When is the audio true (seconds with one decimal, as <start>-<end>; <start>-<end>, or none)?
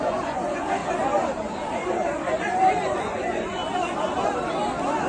0.8-2.4; 3.6-5.1